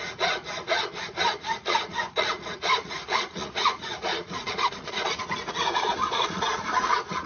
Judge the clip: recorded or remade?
remade